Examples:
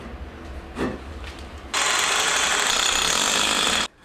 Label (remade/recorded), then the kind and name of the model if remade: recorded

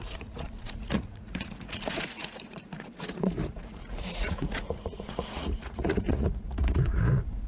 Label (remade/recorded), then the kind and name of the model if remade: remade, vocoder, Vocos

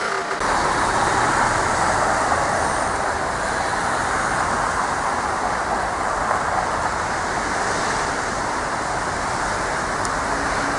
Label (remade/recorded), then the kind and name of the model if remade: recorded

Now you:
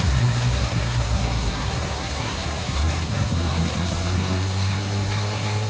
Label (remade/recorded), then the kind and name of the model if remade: remade, codec, SNAC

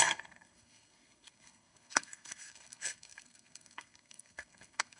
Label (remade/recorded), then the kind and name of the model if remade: remade, codec, SNAC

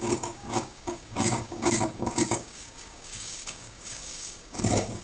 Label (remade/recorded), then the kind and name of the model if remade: remade, codec, DAC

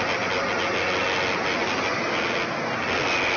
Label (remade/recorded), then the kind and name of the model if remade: recorded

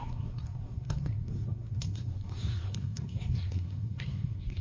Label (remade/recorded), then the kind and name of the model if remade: remade, codec, SNAC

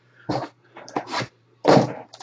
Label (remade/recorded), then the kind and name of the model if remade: remade, vocoder, BigVGAN v2